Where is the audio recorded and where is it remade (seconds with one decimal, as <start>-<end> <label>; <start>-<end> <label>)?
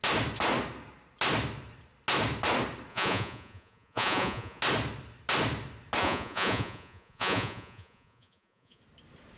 0.0-2.9 recorded; 2.9-4.6 remade; 4.6-6.0 recorded; 6.0-8.8 remade; 8.8-9.4 recorded